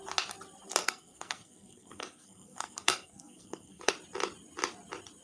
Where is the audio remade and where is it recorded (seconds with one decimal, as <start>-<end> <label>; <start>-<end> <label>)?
0.0-0.8 recorded; 0.8-3.9 remade; 3.9-5.2 recorded